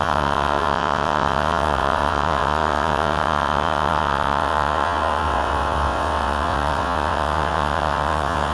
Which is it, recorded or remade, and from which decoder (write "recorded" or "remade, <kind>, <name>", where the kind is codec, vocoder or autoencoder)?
remade, vocoder, WaveNeXt